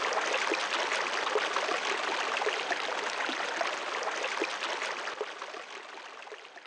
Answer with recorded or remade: recorded